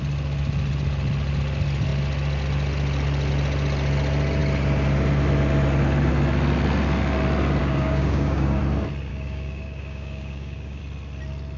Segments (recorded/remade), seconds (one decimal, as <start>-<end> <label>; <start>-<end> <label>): 0.0-7.6 recorded; 7.6-8.6 remade; 8.6-9.1 recorded; 9.1-10.8 remade; 10.8-11.6 recorded

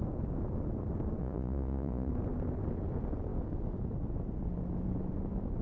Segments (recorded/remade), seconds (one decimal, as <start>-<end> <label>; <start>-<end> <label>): 0.0-1.2 recorded; 1.2-2.1 remade; 2.1-5.6 recorded

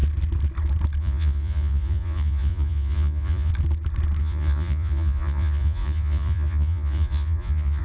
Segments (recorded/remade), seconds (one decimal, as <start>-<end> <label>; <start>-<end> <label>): 0.0-1.0 recorded; 1.0-3.5 remade; 3.5-4.2 recorded; 4.2-7.8 remade

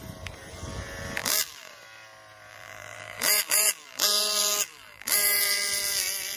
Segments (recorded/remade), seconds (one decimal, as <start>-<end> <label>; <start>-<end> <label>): 0.0-1.2 recorded; 1.2-1.7 remade; 1.7-2.5 recorded; 2.5-6.4 remade

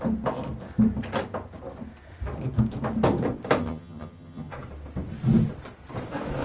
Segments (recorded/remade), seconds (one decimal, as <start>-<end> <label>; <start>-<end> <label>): 0.0-3.6 recorded; 3.6-4.5 remade; 4.5-6.4 recorded

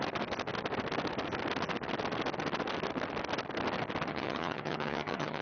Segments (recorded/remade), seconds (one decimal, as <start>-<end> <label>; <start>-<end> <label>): 0.0-4.1 recorded; 4.1-5.4 remade

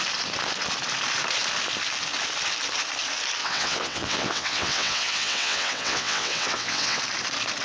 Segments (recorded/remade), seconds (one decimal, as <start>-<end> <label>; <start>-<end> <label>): 0.0-3.4 recorded; 3.4-7.0 remade; 7.0-7.6 recorded